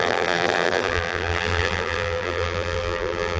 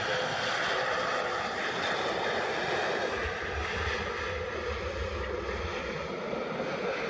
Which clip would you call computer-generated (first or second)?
first